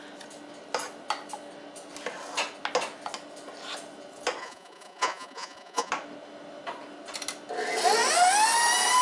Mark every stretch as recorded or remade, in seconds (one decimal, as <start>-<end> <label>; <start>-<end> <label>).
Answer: 0.0-4.4 recorded; 4.4-5.9 remade; 5.9-9.0 recorded